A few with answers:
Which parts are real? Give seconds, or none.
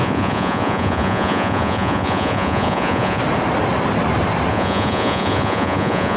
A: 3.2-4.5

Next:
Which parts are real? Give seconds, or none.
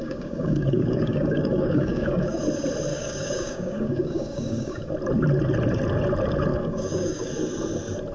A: 2.4-2.9; 4.9-6.5; 7.3-8.1